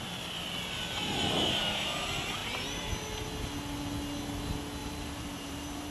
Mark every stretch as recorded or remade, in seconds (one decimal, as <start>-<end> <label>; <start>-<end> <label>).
0.0-2.4 recorded; 2.4-2.9 remade; 2.9-4.8 recorded; 4.8-5.9 remade